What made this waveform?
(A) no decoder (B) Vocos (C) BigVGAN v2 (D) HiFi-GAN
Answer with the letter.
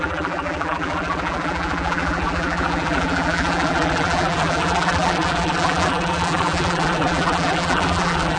C